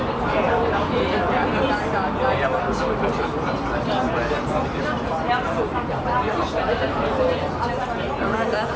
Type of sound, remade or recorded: recorded